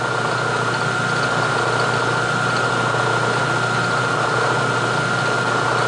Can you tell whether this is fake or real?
real